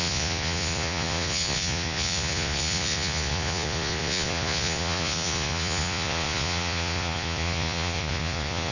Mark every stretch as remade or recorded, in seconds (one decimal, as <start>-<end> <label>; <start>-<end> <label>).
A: 0.0-8.7 remade